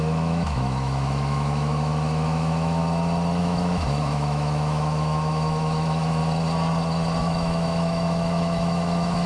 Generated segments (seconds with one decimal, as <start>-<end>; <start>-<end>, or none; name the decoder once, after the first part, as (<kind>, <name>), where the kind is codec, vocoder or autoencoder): 0.0-2.8 (autoencoder, DAC-VAE); 3.4-6.2; 7.2-9.3

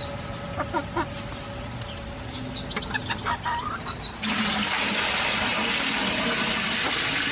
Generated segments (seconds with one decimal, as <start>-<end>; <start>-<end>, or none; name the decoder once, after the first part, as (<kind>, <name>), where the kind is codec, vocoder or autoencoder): none

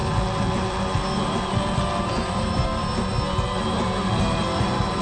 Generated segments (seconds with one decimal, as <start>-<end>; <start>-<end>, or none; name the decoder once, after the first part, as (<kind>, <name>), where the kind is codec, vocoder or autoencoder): none

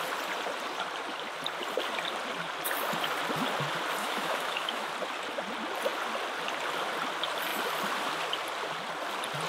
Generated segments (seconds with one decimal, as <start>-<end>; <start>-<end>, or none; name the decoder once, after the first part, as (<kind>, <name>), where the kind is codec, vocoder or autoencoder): 4.0-4.9 (autoencoder, DAC-VAE)

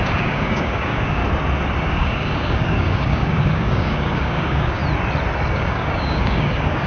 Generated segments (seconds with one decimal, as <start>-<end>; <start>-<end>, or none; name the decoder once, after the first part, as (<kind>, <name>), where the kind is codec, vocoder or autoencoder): 0.0-1.2 (codec, DAC); 1.9-4.8; 5.5-6.9